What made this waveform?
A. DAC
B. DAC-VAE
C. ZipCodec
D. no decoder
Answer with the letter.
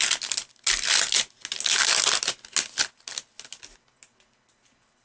D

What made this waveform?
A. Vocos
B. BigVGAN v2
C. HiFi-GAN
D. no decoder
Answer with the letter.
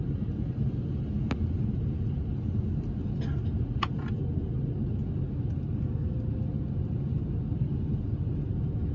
D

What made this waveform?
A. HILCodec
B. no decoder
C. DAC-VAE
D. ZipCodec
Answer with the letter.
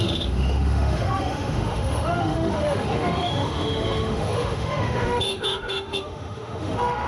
C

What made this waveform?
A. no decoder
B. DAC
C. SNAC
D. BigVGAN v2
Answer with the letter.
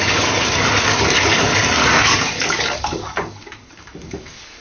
B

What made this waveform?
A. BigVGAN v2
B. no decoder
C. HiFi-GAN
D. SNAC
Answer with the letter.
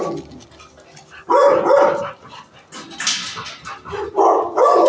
B